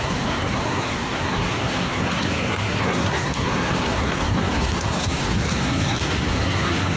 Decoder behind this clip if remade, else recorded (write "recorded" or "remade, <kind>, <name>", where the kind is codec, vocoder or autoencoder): remade, codec, SNAC